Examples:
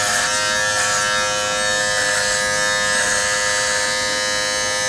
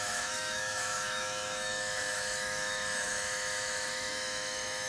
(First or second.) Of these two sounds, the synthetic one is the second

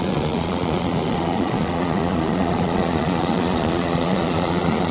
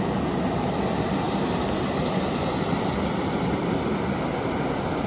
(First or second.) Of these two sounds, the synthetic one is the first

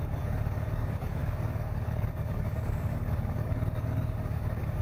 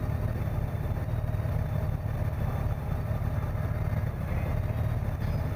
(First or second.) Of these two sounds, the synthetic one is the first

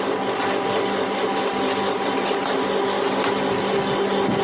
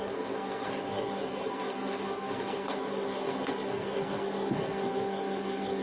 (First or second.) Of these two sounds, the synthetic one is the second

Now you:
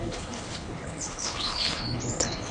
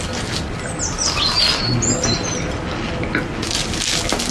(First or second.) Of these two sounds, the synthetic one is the first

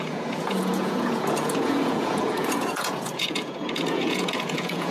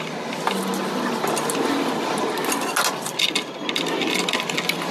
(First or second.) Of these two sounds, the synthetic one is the first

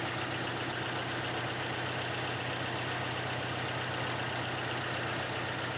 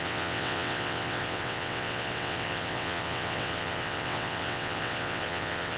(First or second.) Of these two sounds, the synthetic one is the second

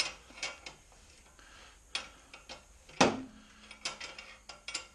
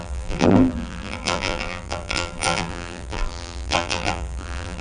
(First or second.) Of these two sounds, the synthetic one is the second